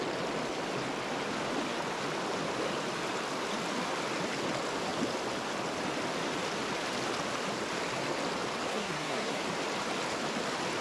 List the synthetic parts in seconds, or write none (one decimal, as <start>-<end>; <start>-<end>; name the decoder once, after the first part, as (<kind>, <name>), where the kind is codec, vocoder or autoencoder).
8.7-9.4 (codec, SNAC)